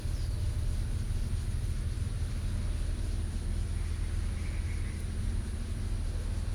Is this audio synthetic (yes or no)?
no